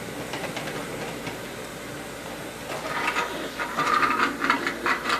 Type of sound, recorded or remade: recorded